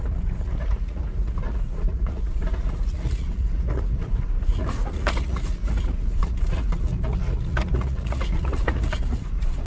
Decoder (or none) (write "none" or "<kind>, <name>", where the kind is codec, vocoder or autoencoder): vocoder, Vocos